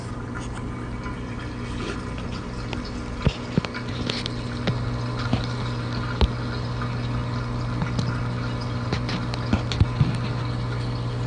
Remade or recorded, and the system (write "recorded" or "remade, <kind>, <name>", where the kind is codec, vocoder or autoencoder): recorded